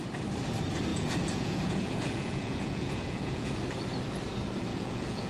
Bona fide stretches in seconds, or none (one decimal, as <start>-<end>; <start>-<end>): 0.0-0.9; 3.5-4.7